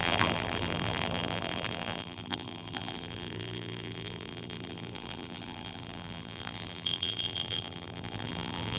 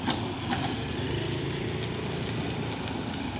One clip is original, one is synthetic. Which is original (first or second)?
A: second